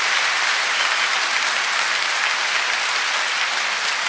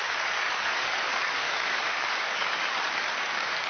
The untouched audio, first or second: first